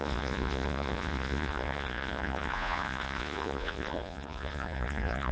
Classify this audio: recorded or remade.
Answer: remade